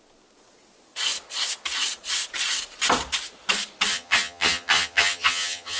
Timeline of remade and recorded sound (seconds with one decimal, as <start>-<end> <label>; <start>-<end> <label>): 0.0-3.9 recorded; 3.9-5.8 remade